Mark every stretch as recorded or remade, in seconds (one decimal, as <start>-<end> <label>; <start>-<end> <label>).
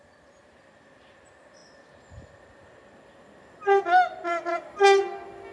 0.0-5.5 recorded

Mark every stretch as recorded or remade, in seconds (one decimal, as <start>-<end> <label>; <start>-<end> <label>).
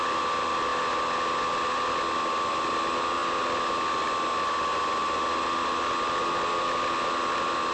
0.0-7.7 recorded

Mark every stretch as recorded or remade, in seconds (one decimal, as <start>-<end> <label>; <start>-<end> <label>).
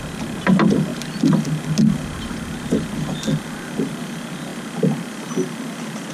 0.0-6.1 recorded